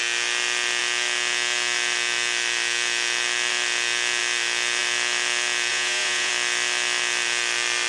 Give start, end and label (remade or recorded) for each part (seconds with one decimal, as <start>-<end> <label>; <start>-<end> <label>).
0.0-5.7 recorded; 5.7-6.3 remade; 6.3-7.9 recorded